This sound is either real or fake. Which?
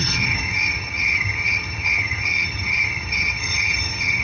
fake